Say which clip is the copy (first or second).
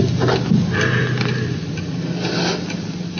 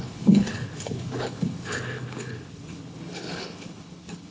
second